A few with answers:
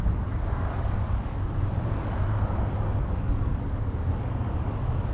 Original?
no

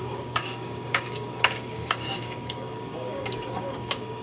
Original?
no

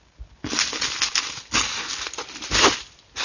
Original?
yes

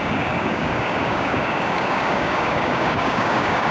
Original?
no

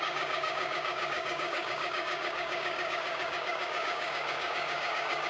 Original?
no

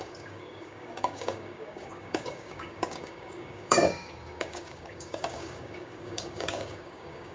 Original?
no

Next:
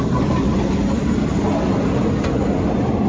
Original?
yes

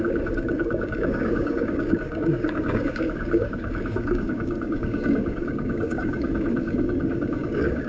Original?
no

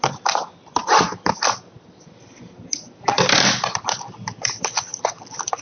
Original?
yes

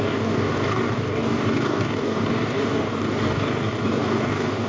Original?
no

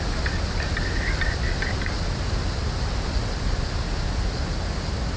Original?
yes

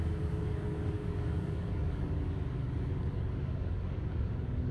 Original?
no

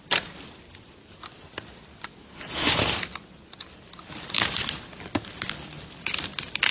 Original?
yes